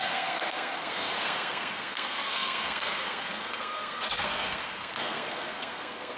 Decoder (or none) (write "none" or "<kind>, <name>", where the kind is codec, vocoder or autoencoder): codec, SNAC